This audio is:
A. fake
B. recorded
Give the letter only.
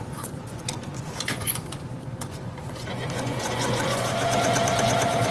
A